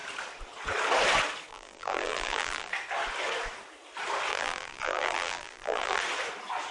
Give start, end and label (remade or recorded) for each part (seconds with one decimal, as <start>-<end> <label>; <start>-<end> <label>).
0.0-1.5 recorded; 1.5-2.7 remade; 2.7-4.3 recorded; 4.3-6.0 remade; 6.0-6.7 recorded